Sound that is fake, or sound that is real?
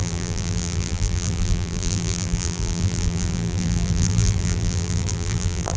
fake